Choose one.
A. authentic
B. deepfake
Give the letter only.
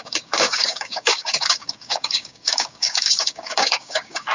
B